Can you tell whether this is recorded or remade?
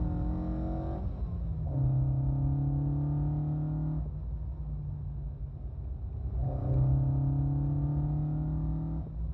recorded